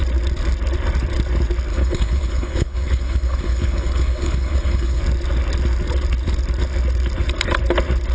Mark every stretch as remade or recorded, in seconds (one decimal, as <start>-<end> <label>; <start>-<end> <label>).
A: 0.0-1.7 recorded; 1.7-5.0 remade; 5.0-8.1 recorded